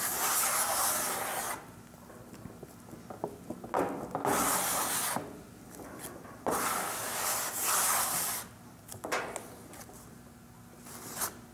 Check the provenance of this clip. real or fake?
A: real